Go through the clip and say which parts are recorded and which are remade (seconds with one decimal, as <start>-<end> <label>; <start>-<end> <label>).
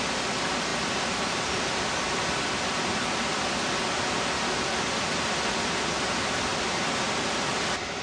0.0-8.0 recorded